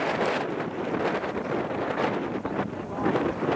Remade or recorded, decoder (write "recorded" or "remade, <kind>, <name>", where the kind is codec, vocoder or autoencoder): remade, vocoder, BigVGAN v2